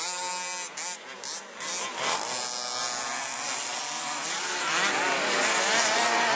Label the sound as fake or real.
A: real